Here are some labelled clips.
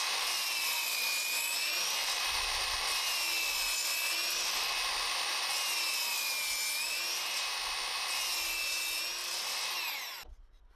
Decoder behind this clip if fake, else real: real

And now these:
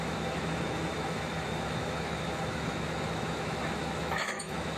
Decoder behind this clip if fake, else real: fake, autoencoder, DAC-VAE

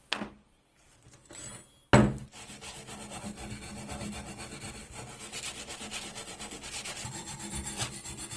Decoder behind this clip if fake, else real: real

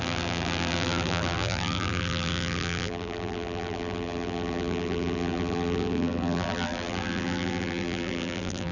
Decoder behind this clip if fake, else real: fake, vocoder, BigVGAN v2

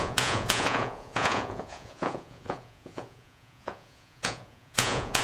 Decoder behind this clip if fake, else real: fake, vocoder, Vocos